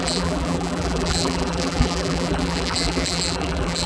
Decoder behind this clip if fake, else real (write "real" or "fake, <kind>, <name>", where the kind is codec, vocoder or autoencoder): fake, vocoder, BigVGAN v2